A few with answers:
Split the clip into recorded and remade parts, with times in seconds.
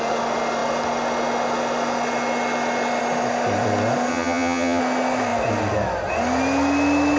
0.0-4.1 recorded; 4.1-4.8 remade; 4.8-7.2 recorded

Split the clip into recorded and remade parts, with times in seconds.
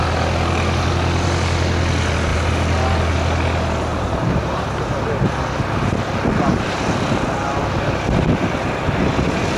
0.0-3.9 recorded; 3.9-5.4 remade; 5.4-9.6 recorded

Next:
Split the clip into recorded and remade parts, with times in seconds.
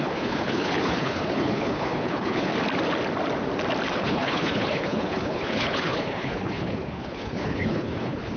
0.0-2.5 remade; 2.5-3.9 recorded; 3.9-8.4 remade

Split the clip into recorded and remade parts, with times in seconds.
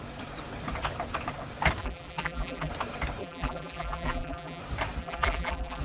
0.0-1.8 recorded; 1.8-2.7 remade; 2.7-3.2 recorded; 3.2-4.6 remade; 4.6-5.0 recorded; 5.0-5.8 remade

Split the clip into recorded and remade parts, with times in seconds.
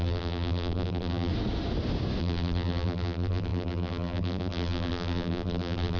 0.0-1.3 remade; 1.3-2.2 recorded; 2.2-6.0 remade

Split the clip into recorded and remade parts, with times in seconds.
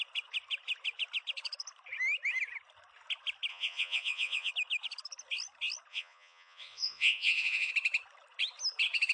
0.0-3.5 recorded; 3.5-4.5 remade; 4.5-5.9 recorded; 5.9-7.7 remade; 7.7-9.1 recorded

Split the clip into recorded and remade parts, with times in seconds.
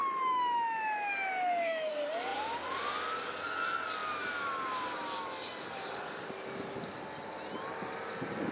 0.0-1.9 remade; 1.9-8.5 recorded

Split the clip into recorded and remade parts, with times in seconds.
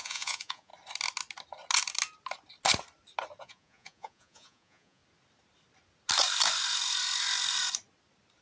0.0-0.7 remade; 0.7-3.4 recorded; 3.4-5.0 remade; 5.0-8.4 recorded